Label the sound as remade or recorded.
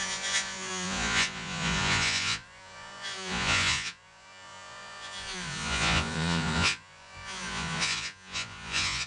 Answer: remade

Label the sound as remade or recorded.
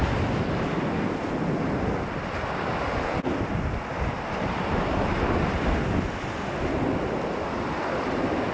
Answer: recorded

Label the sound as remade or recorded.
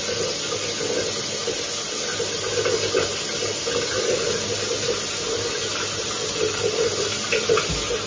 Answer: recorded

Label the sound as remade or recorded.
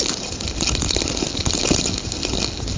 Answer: recorded